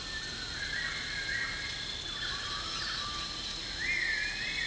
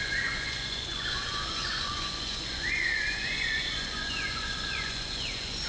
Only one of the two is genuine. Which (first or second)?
first